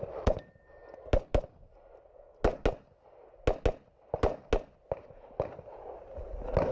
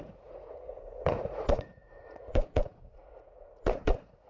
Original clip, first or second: first